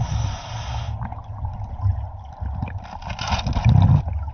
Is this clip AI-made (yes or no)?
no